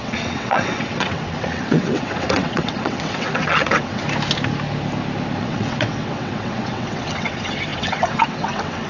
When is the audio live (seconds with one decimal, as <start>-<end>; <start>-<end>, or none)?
4.0-5.4